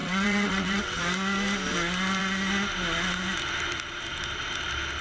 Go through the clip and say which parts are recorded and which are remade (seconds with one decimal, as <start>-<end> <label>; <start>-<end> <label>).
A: 0.0-1.0 remade; 1.0-5.0 recorded